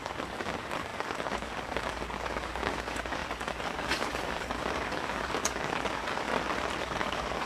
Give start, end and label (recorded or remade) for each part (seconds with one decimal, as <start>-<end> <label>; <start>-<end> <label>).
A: 0.0-6.3 remade; 6.3-6.8 recorded; 6.8-7.5 remade

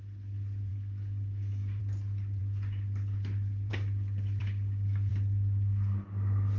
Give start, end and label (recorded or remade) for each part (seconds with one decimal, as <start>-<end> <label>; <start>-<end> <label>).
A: 0.0-0.7 recorded; 0.7-1.8 remade; 1.8-4.4 recorded; 4.4-5.1 remade; 5.1-6.6 recorded